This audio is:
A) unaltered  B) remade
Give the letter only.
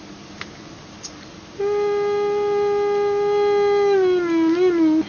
A